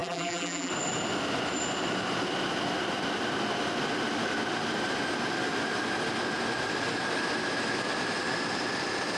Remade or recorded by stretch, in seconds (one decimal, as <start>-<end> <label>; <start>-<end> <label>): 0.0-0.7 remade; 0.7-9.2 recorded

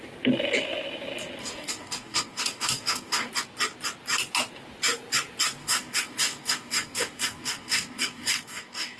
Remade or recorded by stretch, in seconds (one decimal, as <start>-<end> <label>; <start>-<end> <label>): 0.0-1.4 recorded; 1.4-3.3 remade; 3.3-5.6 recorded; 5.6-9.0 remade

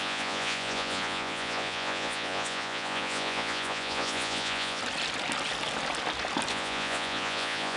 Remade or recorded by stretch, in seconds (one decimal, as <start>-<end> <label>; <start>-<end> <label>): 0.0-4.8 remade; 4.8-6.5 recorded; 6.5-7.8 remade

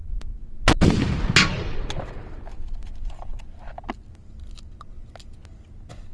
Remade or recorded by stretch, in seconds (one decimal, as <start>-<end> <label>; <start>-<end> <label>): 0.0-6.1 recorded

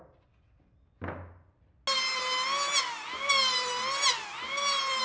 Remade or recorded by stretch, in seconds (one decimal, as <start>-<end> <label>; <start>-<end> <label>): 0.0-5.0 recorded

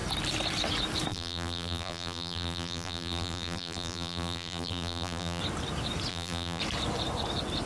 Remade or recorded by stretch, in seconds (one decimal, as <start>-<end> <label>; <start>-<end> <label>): 0.0-1.1 recorded; 1.1-5.4 remade; 5.4-6.1 recorded; 6.1-6.6 remade; 6.6-7.7 recorded

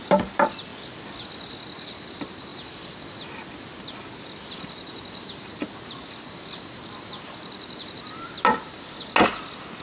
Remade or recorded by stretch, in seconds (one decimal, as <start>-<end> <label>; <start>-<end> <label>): 0.0-9.8 recorded